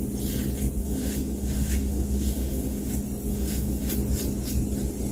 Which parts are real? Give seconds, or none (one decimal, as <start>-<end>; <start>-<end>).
0.0-0.8; 2.9-3.3; 3.9-5.1